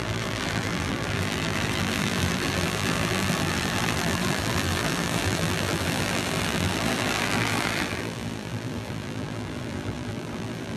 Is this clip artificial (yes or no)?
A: yes